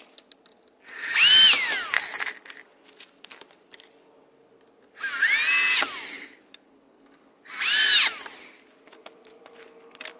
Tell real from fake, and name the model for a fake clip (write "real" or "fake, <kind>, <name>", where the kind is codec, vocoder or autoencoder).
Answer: real